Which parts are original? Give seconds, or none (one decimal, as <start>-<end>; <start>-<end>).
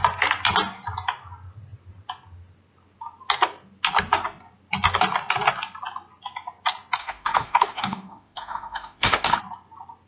0.0-7.0; 9.4-10.1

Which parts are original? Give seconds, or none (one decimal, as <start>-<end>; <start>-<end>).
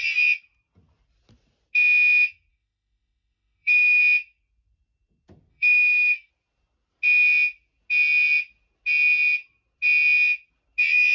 0.0-2.5; 4.0-5.5; 6.3-11.1